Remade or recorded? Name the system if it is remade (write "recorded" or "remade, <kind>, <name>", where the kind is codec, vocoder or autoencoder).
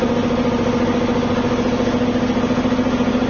recorded